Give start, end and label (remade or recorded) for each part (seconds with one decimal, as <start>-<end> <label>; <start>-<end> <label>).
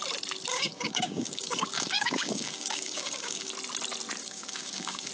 0.0-0.5 recorded; 0.5-3.5 remade; 3.5-4.2 recorded; 4.2-5.1 remade